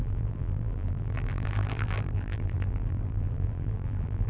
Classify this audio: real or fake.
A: fake